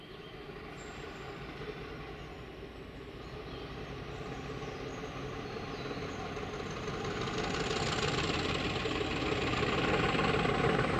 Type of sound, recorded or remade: recorded